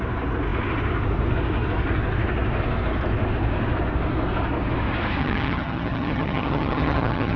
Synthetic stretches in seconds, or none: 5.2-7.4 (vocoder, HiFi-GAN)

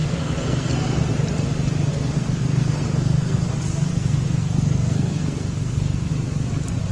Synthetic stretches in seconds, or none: 0.0-1.1 (codec, SNAC); 1.9-3.5; 3.9-6.1

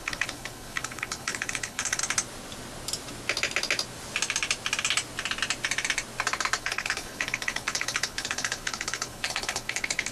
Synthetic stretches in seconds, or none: 0.0-2.0 (codec, HILCodec); 6.6-10.1

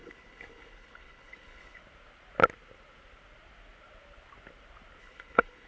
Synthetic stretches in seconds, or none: 0.0-1.8 (codec, HILCodec); 5.0-5.7

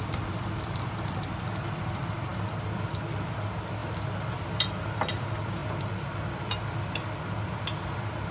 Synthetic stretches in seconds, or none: 0.0-3.8 (vocoder, BigVGAN v2); 4.3-8.3

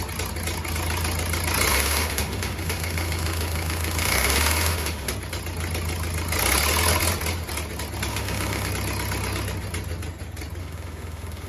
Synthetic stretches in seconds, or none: 1.7-5.1 (autoencoder, DAC-VAE); 8.1-8.7; 10.6-11.5

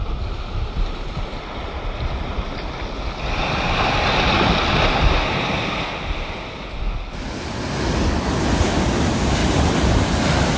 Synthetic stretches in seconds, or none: none

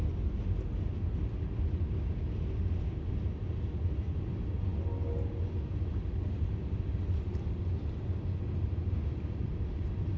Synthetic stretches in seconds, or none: none